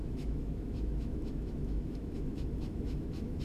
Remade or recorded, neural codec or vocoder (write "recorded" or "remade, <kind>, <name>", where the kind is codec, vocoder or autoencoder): remade, autoencoder, DAC-VAE